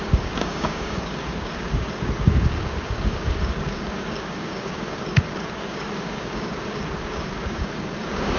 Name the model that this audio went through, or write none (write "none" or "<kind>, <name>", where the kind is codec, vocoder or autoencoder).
codec, DAC